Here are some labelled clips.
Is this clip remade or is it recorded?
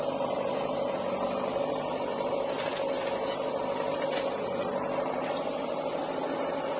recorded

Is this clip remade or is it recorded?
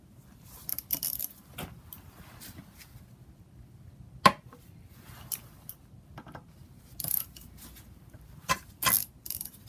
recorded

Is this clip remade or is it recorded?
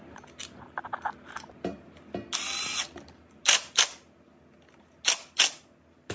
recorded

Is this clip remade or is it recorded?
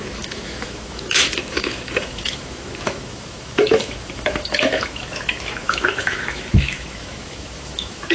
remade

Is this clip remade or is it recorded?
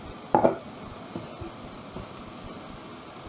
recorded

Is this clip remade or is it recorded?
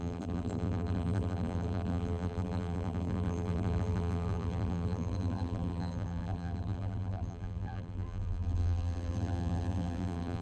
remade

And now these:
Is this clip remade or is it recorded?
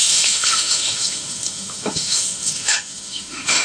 remade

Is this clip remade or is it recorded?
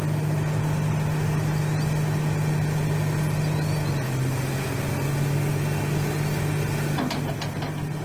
recorded